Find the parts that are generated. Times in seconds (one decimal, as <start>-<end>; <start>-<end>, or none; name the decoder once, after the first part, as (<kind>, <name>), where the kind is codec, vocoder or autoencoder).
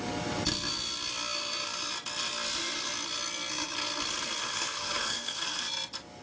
4.4-5.6 (codec, SNAC)